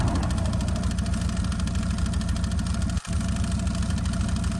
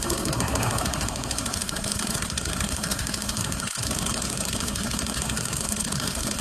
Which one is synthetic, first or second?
second